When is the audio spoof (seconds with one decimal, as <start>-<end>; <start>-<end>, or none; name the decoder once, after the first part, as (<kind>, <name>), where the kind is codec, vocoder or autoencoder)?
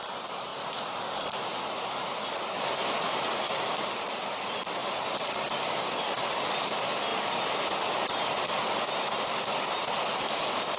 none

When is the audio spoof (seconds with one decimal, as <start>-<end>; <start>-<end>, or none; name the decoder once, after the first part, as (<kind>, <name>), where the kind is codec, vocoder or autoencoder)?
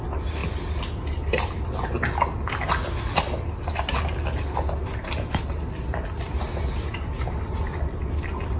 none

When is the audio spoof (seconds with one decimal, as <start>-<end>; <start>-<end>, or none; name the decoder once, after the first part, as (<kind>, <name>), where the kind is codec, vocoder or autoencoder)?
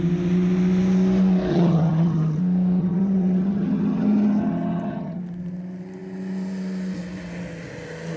1.5-2.4 (vocoder, HiFi-GAN); 2.8-5.2